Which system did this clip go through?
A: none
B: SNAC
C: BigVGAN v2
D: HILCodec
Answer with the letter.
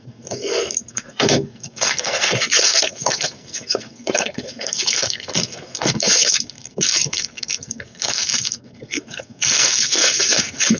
B